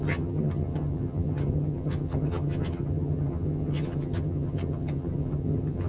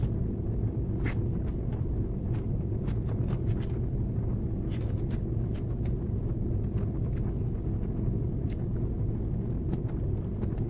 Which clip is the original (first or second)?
second